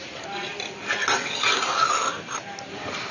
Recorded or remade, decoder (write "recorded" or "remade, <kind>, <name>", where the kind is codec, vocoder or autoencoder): recorded